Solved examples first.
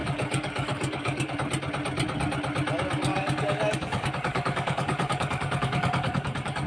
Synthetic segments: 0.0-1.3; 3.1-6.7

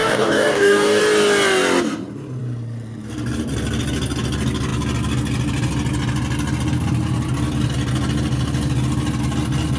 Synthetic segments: 0.0-1.0

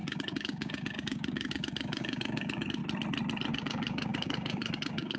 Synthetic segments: 0.0-2.8; 3.5-5.2

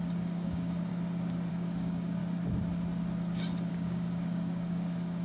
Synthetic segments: 0.0-0.9; 1.5-2.2; 3.7-5.2

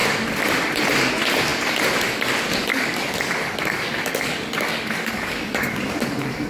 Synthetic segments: 2.7-6.5

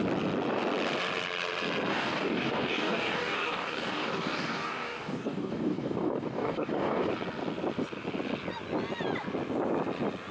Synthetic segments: 1.9-7.1

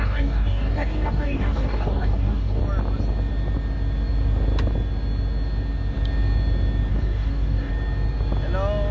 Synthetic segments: 0.0-2.6; 6.9-7.7

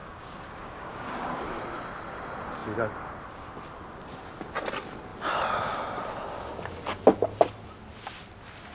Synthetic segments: 0.0-1.3